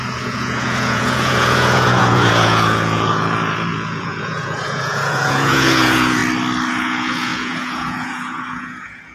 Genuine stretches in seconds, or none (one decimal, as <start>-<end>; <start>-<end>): 6.2-6.7